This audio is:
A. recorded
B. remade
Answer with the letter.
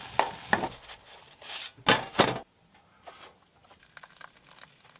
A